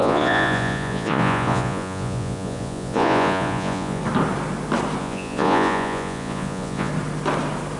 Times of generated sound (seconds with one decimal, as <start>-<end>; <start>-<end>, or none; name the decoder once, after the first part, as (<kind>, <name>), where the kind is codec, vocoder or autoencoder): 0.0-4.0 (vocoder, Vocos); 5.0-6.9